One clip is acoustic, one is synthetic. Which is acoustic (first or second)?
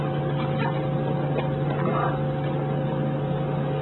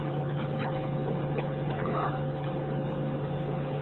first